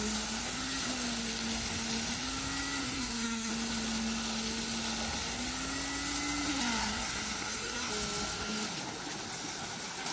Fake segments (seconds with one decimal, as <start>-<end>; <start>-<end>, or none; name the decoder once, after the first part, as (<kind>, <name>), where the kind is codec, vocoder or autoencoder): 2.8-3.5 (codec, SNAC); 6.8-7.9